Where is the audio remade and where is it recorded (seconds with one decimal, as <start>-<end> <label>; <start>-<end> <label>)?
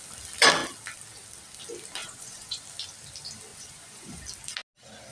0.0-2.0 recorded; 2.0-2.6 remade; 2.6-3.5 recorded; 3.5-4.2 remade; 4.2-5.1 recorded